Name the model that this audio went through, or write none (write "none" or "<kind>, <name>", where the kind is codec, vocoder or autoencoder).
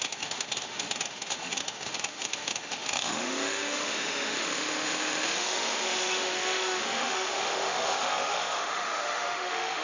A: autoencoder, DAC-VAE